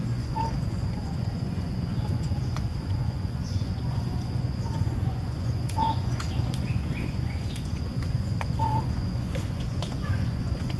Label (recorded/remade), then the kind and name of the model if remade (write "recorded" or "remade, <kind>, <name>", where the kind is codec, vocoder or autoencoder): remade, vocoder, Vocos